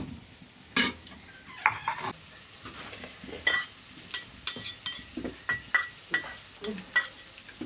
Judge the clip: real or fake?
real